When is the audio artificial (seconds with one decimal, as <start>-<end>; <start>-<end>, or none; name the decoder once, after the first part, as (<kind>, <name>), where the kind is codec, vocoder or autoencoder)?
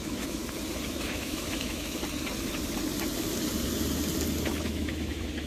0.0-0.4 (autoencoder, DAC-VAE); 0.9-2.0; 4.6-5.5